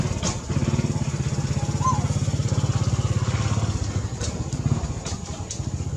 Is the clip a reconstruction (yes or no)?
no